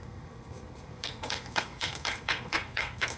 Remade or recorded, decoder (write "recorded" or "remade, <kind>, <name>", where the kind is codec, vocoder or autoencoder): remade, codec, SNAC